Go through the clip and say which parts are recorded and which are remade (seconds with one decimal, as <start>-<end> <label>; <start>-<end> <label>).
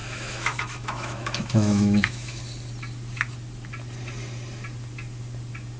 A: 0.0-2.4 remade; 2.4-5.8 recorded